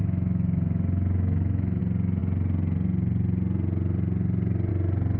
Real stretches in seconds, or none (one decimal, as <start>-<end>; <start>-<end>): 1.8-5.2